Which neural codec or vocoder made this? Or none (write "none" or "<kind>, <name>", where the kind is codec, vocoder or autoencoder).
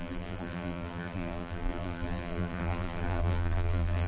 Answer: vocoder, BigVGAN v2